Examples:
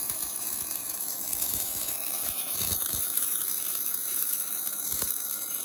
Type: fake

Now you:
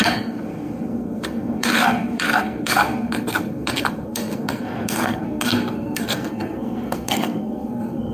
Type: fake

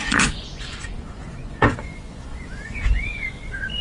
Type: fake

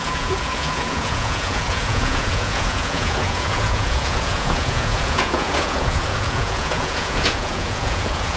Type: fake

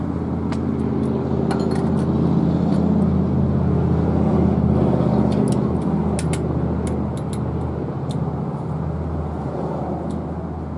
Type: real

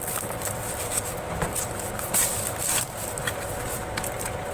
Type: real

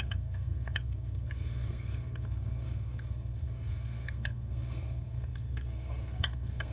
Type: fake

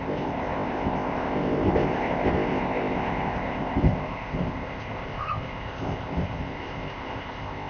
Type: fake